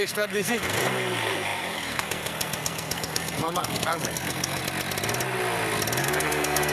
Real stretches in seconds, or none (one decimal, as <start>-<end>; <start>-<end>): 4.6-6.0